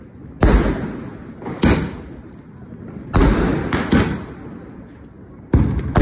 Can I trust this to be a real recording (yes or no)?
yes